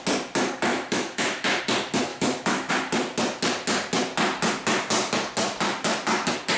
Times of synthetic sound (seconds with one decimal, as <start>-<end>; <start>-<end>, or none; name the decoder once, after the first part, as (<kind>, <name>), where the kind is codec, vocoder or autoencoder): 0.7-1.6 (autoencoder, DAC-VAE); 2.1-2.7